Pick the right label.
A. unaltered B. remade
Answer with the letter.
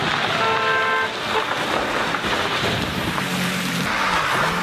A